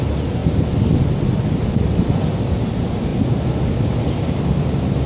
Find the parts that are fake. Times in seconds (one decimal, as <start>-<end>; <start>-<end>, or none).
none